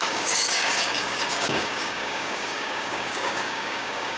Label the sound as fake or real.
fake